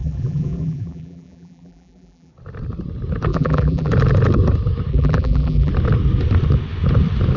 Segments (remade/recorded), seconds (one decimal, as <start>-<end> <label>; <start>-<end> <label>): 0.0-2.3 remade; 2.3-3.3 recorded; 3.3-3.9 remade; 3.9-4.9 recorded; 4.9-5.7 remade; 5.7-7.4 recorded